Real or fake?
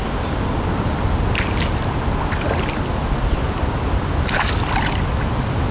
real